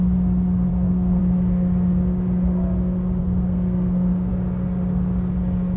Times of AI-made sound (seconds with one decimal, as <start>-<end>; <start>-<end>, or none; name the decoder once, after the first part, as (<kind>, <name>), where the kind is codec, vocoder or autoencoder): 0.7-1.2 (codec, SNAC); 3.2-4.3